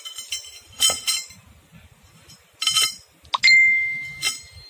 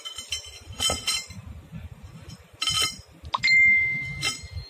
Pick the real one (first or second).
first